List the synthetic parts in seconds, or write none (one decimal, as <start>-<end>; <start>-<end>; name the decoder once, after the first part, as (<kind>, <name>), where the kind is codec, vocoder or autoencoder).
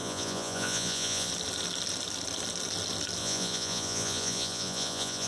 0.0-1.3 (vocoder, Vocos); 3.2-5.3